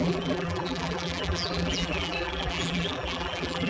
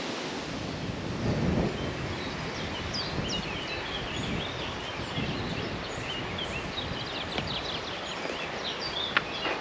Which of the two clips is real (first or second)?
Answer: second